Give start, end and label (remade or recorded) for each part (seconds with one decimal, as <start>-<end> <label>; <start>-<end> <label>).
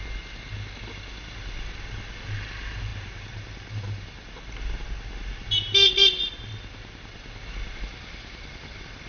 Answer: 0.0-9.1 recorded